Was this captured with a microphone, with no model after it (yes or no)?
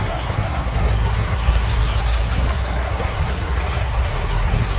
no